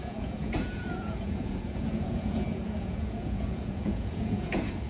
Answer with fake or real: fake